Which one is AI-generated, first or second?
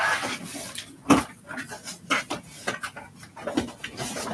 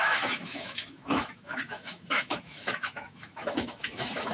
second